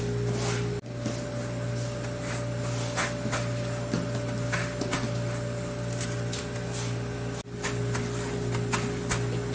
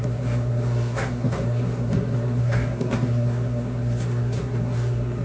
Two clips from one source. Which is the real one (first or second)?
first